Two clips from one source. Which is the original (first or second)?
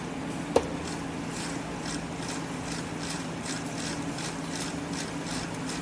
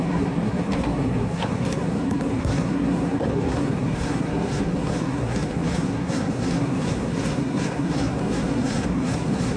first